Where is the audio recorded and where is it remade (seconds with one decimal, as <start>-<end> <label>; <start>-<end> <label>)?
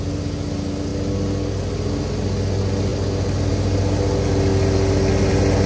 0.0-5.7 recorded